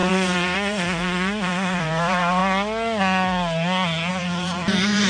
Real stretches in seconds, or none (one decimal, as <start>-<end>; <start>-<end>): 2.4-4.1